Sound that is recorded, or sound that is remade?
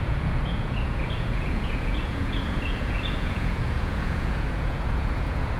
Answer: remade